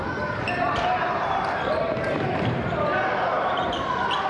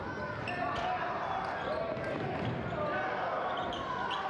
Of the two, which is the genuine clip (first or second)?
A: second